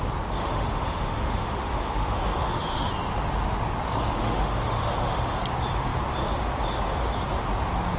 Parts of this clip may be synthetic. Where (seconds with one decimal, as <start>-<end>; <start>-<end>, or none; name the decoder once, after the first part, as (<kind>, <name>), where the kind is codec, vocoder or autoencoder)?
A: 0.4-2.9 (autoencoder, DAC-VAE); 3.9-5.4